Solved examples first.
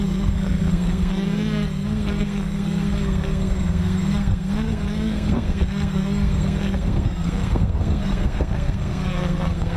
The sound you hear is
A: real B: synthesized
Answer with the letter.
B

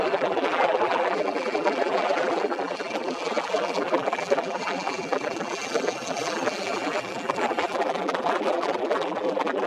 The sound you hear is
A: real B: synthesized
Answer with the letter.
B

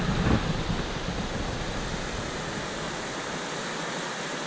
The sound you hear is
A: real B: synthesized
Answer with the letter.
A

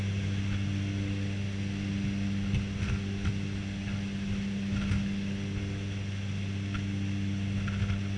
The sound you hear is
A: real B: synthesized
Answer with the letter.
A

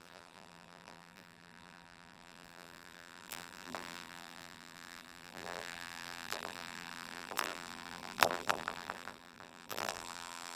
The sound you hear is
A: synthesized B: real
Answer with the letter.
A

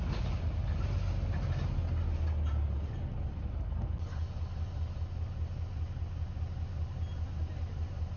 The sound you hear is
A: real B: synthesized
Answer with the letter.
A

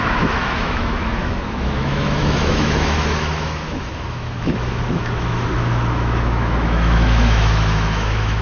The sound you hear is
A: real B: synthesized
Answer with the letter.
B